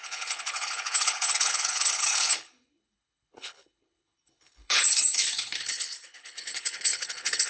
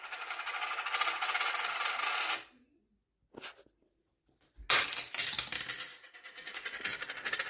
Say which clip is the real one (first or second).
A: second